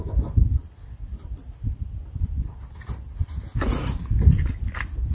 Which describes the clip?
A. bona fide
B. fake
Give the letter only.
A